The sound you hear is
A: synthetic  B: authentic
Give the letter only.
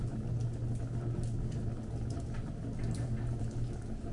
B